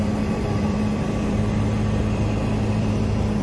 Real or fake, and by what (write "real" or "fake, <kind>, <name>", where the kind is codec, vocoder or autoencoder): fake, vocoder, BigVGAN v2